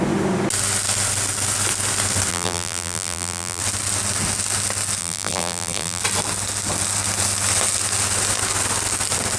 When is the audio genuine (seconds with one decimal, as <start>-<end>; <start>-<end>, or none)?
0.0-2.3; 3.6-5.0; 6.0-9.4